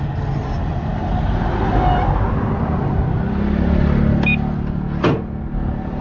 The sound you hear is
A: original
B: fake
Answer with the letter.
A